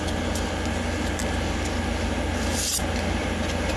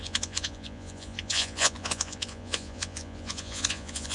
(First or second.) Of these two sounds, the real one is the first